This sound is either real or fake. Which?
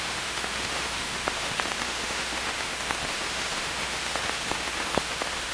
fake